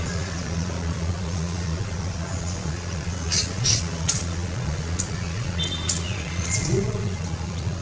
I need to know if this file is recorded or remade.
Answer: remade